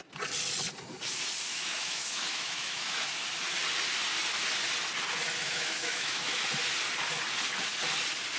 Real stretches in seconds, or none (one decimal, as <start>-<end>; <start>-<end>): 0.0-1.5; 3.0-5.4; 6.4-8.4